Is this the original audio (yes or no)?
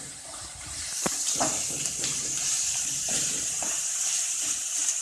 no